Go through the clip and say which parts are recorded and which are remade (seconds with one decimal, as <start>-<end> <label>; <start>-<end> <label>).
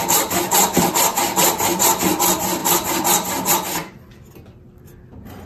0.0-5.5 recorded